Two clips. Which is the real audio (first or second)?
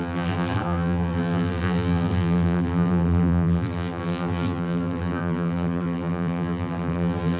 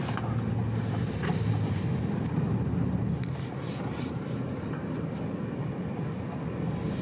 second